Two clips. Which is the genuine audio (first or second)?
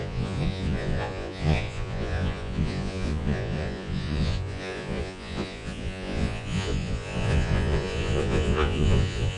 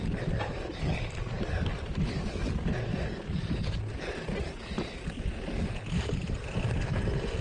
second